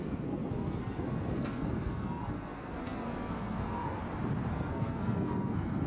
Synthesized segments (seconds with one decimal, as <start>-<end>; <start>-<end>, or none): 0.0-4.0; 4.5-5.9